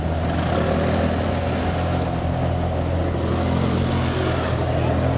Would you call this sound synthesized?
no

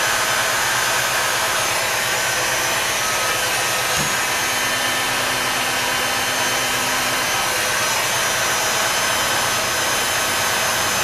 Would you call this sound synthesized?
no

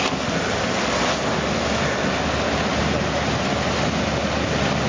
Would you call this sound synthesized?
no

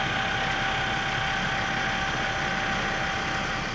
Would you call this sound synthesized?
no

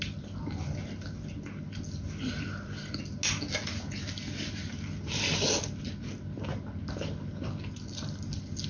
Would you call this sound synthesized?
no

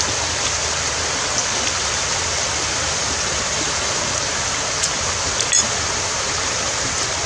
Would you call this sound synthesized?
no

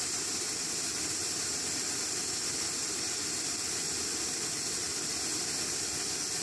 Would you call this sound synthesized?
no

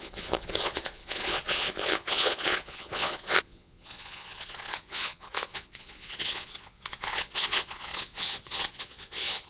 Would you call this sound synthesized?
yes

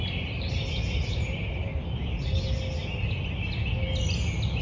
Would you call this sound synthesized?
no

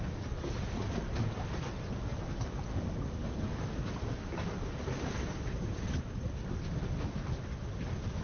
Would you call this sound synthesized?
no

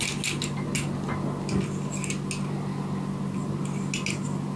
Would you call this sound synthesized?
no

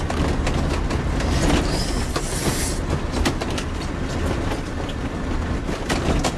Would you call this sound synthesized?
no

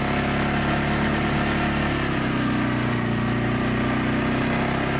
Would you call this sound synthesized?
no